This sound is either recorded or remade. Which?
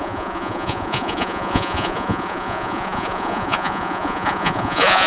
remade